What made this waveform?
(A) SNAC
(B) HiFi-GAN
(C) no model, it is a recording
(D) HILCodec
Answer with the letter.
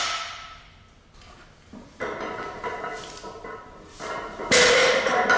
C